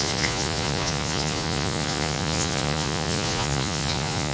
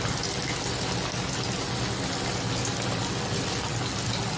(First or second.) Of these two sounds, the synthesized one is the first